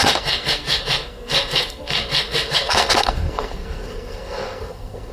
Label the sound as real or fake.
fake